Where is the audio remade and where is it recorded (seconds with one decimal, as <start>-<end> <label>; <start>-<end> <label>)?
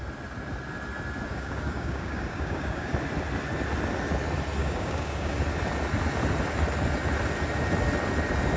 0.0-1.3 recorded; 1.3-2.9 remade; 2.9-4.6 recorded; 4.6-5.4 remade; 5.4-8.6 recorded